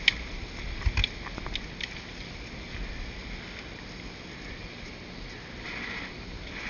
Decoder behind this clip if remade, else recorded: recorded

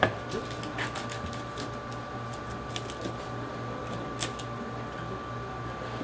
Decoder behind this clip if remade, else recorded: recorded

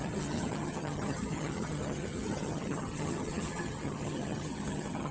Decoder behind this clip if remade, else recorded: remade, vocoder, HiFi-GAN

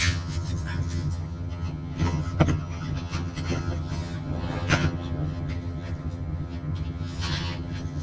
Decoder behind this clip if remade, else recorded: remade, vocoder, HiFi-GAN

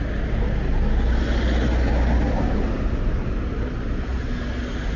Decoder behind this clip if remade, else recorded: recorded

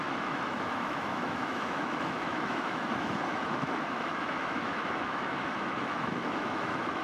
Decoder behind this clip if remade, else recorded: remade, autoencoder, DAC-VAE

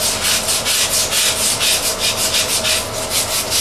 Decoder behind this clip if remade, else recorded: recorded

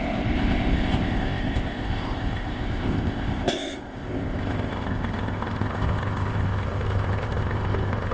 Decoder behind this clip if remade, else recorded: remade, codec, ZipCodec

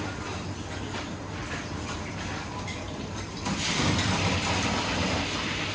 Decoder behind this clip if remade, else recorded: recorded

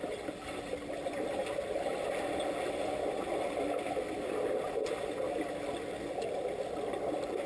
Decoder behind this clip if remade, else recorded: recorded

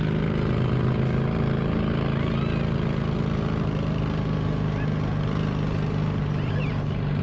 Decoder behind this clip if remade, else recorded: recorded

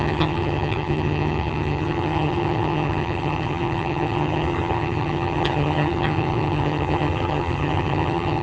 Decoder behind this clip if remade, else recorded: remade, vocoder, HiFi-GAN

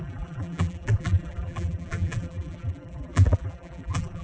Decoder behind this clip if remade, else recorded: remade, vocoder, BigVGAN v2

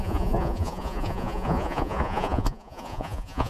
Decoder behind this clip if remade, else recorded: remade, vocoder, Vocos